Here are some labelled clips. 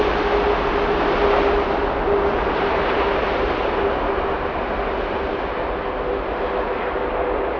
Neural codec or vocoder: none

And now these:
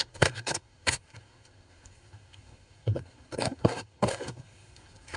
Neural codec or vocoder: codec, SNAC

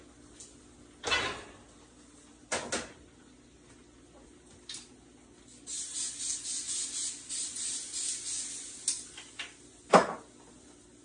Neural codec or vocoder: none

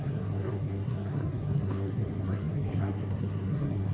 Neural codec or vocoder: codec, SNAC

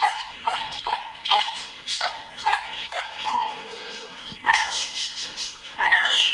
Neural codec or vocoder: codec, SNAC